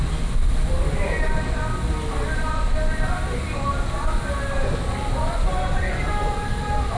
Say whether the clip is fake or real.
real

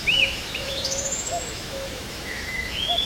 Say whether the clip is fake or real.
fake